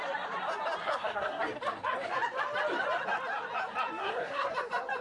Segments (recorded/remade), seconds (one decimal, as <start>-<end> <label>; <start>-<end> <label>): 0.0-0.8 recorded; 0.8-1.4 remade; 1.4-4.0 recorded; 4.0-4.5 remade; 4.5-5.0 recorded